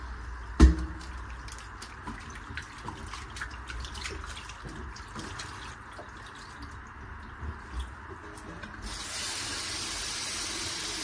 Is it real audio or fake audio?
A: real